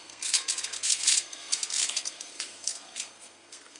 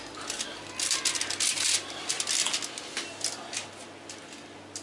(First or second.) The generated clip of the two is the first